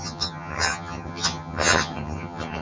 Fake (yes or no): yes